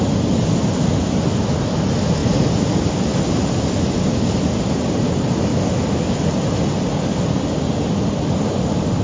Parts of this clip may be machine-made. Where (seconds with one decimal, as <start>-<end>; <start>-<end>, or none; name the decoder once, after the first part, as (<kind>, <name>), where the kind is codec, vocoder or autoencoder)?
none